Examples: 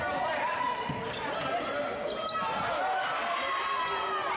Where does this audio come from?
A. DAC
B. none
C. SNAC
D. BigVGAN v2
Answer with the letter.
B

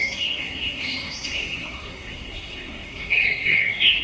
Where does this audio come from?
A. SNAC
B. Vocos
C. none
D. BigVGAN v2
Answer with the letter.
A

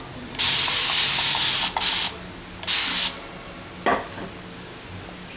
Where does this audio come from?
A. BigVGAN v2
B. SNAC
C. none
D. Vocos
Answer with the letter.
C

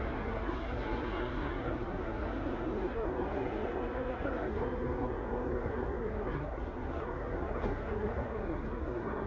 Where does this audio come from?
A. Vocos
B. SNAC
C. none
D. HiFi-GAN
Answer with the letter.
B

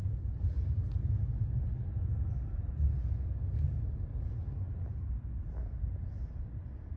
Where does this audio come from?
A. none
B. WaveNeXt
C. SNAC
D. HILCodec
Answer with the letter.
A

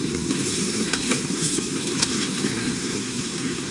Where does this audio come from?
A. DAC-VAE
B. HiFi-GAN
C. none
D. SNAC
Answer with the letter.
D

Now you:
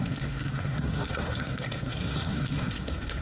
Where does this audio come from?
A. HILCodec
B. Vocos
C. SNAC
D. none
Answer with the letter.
C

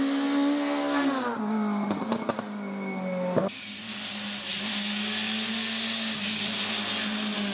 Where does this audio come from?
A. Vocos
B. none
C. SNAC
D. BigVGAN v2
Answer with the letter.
B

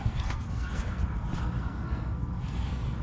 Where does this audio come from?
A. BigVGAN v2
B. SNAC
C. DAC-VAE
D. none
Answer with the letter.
B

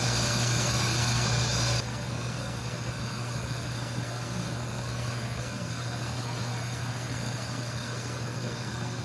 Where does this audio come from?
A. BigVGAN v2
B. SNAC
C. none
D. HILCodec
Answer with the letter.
B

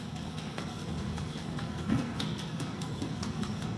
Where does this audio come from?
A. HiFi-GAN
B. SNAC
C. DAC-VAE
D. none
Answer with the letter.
B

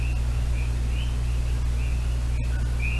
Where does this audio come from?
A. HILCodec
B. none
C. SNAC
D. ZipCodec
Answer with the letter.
B